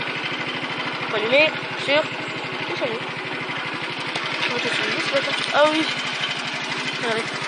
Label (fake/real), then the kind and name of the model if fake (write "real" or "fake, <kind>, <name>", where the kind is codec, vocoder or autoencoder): real